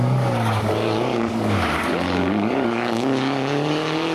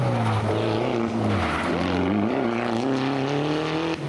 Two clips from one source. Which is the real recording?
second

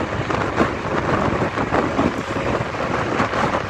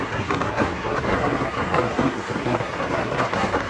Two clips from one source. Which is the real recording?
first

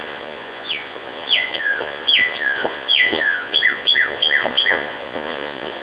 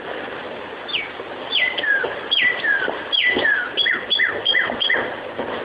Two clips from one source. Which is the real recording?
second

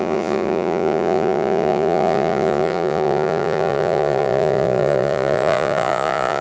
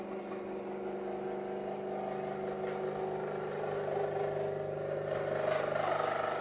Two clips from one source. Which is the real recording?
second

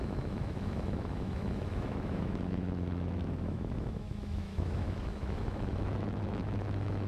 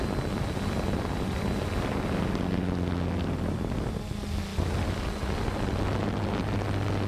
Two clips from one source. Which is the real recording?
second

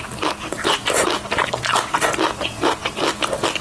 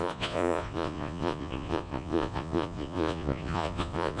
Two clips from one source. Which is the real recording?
first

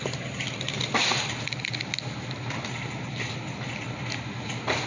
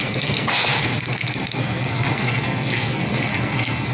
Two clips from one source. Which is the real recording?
first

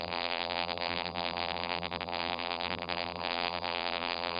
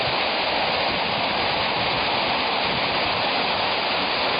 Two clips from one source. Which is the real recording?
second